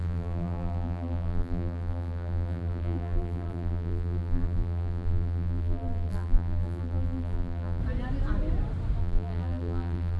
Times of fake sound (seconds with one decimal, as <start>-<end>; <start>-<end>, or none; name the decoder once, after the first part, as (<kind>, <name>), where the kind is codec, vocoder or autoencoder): 0.0-7.8 (vocoder, BigVGAN v2); 9.0-10.2